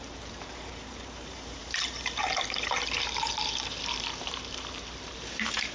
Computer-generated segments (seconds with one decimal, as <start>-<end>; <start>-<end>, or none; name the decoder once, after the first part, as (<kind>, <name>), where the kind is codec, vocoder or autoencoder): 0.0-5.7 (vocoder, BigVGAN v2)